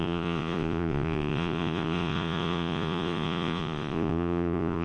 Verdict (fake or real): fake